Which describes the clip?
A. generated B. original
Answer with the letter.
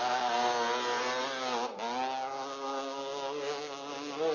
B